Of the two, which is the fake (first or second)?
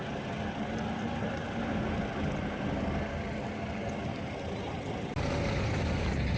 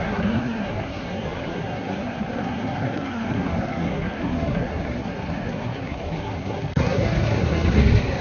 second